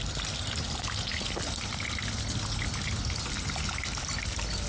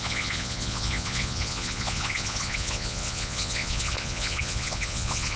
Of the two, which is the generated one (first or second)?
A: second